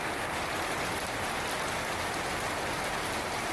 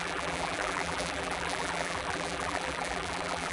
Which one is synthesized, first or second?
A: second